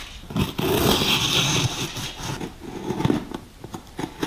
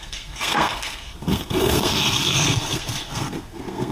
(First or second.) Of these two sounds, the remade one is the second